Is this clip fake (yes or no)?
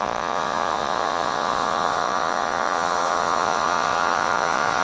yes